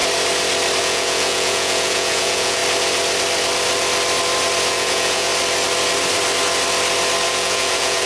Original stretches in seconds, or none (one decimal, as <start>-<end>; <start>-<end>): 0.0-0.8; 2.6-4.7; 5.3-7.3